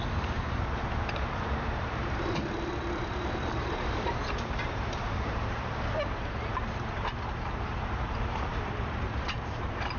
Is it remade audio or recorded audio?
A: remade